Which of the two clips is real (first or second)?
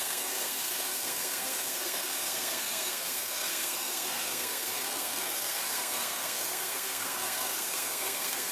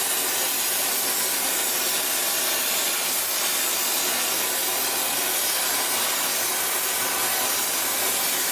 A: second